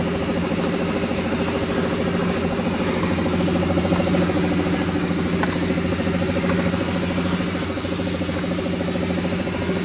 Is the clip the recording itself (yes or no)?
yes